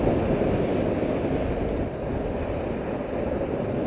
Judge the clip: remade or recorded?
recorded